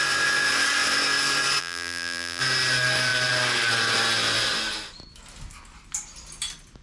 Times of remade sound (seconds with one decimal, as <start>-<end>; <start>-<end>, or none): 1.6-2.4